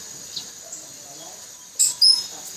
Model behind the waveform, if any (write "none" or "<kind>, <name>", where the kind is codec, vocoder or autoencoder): none